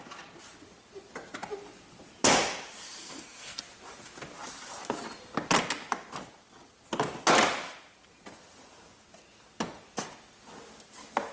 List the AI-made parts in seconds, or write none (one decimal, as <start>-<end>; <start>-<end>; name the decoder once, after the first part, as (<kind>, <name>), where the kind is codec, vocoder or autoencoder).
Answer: 3.0-3.6 (codec, SNAC)